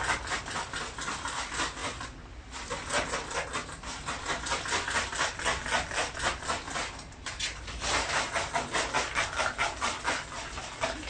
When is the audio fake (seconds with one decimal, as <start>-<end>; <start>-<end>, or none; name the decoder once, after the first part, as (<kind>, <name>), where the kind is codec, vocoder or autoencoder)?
none